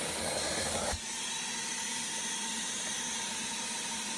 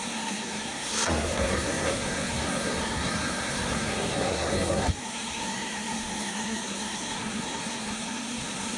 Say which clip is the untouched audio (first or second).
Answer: first